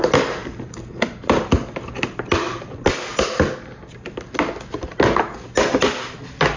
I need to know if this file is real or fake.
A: real